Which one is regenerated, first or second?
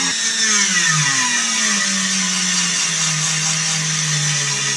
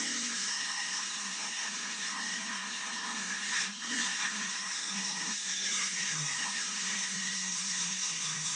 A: second